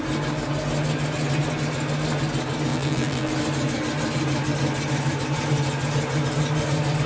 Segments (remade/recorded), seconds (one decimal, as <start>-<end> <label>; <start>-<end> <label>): 0.0-2.7 recorded; 2.7-3.3 remade; 3.3-7.1 recorded